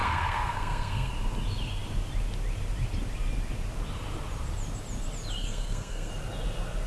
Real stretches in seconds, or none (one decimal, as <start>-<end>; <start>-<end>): 1.1-5.4; 6.1-6.9